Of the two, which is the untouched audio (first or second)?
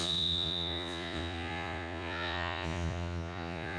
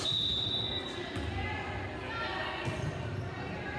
second